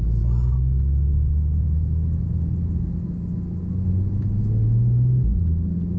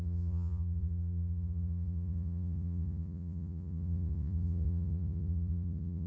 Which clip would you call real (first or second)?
first